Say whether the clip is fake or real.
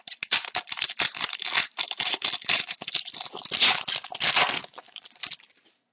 real